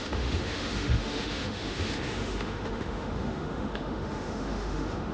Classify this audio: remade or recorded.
remade